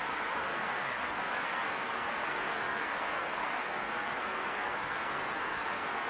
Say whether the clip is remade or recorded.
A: remade